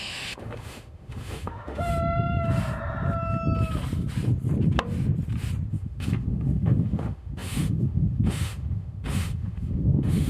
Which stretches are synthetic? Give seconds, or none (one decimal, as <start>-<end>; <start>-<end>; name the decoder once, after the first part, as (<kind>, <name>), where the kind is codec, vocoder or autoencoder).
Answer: 0.0-1.9 (autoencoder, DAC-VAE); 5.7-10.3